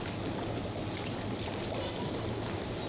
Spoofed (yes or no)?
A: no